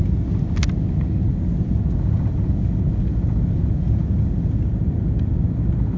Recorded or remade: recorded